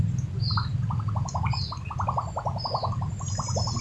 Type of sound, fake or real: real